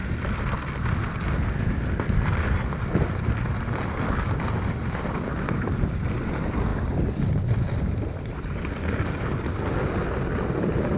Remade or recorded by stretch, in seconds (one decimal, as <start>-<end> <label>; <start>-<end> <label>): 0.0-11.0 recorded